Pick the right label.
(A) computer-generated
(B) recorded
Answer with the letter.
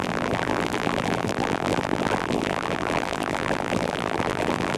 A